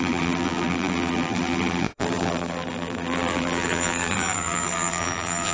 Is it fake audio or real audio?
fake